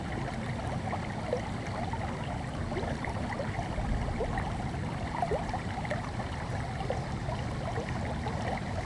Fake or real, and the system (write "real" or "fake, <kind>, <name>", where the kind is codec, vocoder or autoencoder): real